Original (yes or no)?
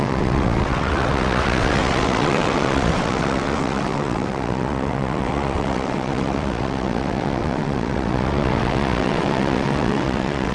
no